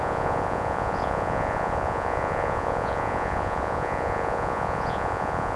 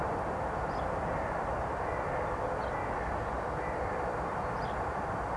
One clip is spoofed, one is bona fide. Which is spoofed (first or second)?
first